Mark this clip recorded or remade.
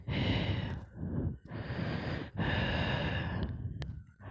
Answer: recorded